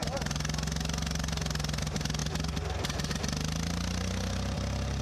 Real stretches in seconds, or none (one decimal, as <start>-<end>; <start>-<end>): 1.8-5.0